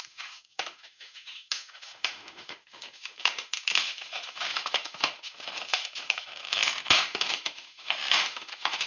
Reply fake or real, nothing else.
fake